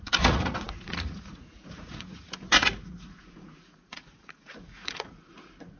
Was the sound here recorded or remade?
remade